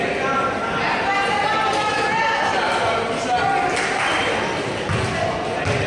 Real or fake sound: real